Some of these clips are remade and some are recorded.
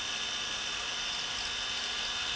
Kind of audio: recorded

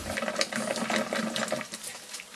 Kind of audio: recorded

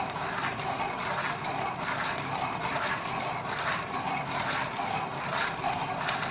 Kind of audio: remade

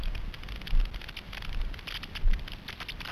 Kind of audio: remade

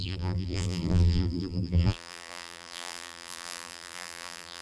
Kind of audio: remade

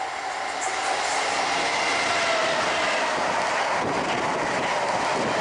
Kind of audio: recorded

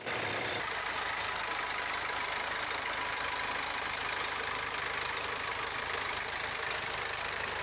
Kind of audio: remade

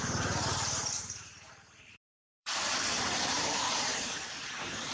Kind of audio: remade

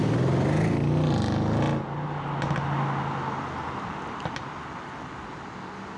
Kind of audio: recorded